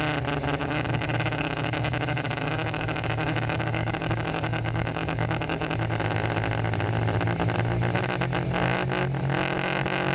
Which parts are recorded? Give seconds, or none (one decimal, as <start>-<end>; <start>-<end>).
0.0-0.6; 5.7-10.1